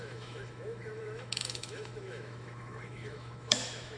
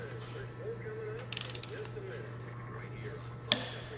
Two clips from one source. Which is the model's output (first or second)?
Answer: first